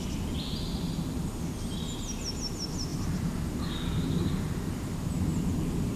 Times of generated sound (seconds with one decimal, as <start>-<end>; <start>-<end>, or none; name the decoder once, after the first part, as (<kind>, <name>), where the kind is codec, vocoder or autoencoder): none